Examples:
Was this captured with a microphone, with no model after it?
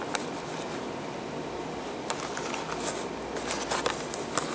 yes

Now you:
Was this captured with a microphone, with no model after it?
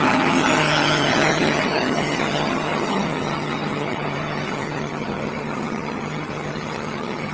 no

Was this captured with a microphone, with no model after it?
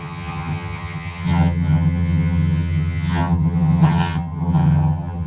no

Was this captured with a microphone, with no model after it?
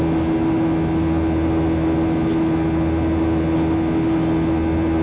yes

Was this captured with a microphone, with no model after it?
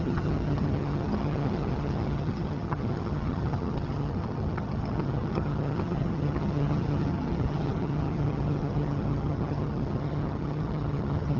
no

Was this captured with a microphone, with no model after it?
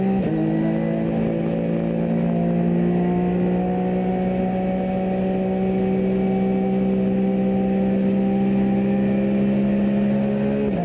yes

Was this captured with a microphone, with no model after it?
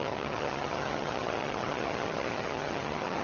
no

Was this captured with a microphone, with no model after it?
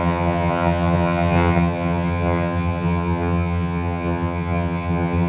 no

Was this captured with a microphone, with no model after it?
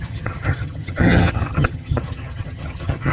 no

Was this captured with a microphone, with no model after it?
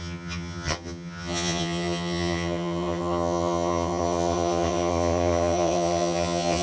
no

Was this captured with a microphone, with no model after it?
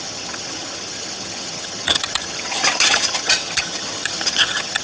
no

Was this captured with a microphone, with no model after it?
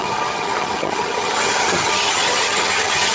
no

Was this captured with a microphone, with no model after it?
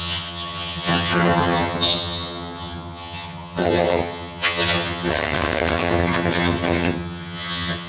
no